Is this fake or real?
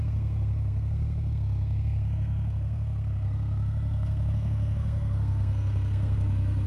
fake